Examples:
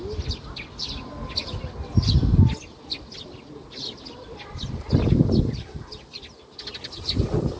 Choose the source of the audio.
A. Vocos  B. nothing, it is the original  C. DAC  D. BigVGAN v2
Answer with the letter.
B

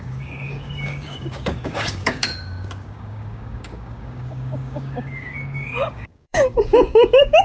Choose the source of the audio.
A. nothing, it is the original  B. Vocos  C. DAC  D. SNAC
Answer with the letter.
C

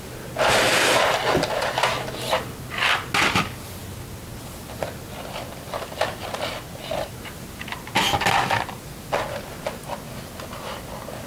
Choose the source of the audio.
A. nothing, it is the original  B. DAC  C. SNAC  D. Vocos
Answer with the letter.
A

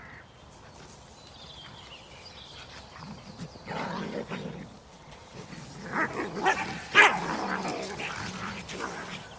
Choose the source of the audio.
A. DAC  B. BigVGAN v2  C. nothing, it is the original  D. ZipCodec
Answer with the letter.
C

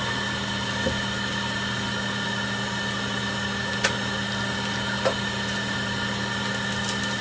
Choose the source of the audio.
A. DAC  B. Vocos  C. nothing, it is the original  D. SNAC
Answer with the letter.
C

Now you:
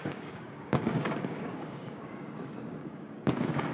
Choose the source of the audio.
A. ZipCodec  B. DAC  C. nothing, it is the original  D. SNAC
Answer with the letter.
B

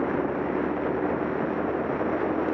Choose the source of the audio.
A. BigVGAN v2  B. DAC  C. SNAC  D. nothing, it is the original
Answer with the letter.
D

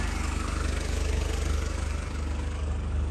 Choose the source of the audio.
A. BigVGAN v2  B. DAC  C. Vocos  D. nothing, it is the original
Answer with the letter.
B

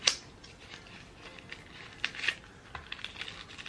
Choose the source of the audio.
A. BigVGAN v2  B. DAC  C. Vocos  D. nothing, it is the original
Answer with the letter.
D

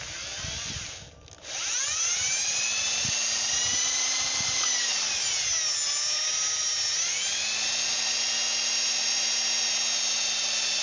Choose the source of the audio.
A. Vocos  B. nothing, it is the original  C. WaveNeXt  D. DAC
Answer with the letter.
B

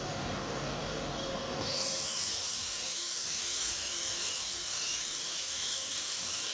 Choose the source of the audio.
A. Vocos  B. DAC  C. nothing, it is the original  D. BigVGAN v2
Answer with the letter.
B